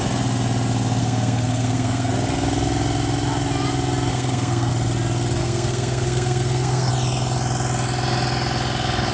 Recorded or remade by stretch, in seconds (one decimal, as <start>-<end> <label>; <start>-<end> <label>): 0.0-1.0 recorded; 1.0-2.1 remade; 2.1-4.1 recorded; 4.1-4.7 remade; 4.7-5.4 recorded; 5.4-6.9 remade; 6.9-9.1 recorded